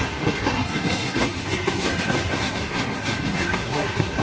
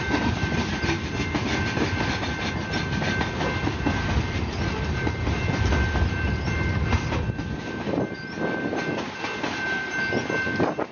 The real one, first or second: second